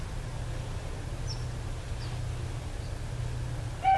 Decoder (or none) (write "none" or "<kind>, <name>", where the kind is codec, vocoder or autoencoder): none